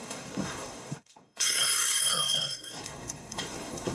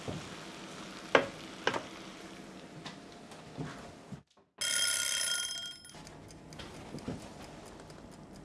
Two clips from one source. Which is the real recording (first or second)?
second